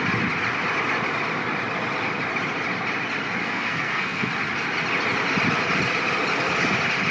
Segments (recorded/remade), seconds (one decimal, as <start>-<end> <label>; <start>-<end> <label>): 0.0-3.4 recorded; 3.4-4.3 remade; 4.3-7.1 recorded

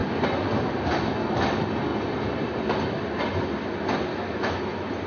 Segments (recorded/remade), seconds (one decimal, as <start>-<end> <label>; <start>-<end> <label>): 0.0-4.1 recorded; 4.1-4.6 remade; 4.6-5.1 recorded

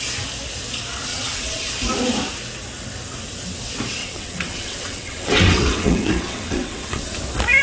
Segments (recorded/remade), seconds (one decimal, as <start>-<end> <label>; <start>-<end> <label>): 0.0-1.1 recorded; 1.1-1.7 remade; 1.7-4.0 recorded; 4.0-7.1 remade; 7.1-7.6 recorded

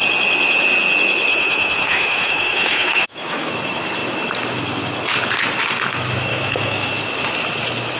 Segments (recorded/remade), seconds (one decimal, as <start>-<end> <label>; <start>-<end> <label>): 0.0-1.3 recorded; 1.3-3.5 remade; 3.5-6.3 recorded; 6.3-6.9 remade; 6.9-8.0 recorded